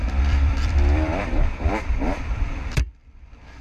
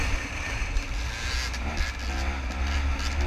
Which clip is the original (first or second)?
second